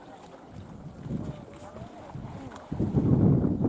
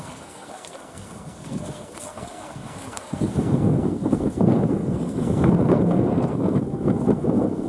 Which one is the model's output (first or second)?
second